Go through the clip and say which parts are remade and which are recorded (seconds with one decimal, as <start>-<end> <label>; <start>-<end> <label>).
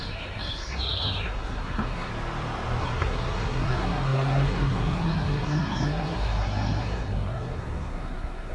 0.0-2.1 remade; 2.1-2.8 recorded; 2.8-8.5 remade